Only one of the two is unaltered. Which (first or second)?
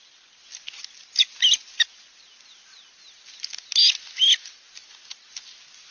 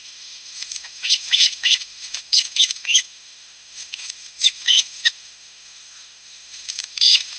first